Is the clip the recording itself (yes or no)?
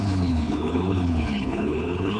no